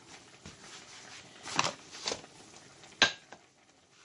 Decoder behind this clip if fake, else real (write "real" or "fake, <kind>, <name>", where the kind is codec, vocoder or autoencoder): real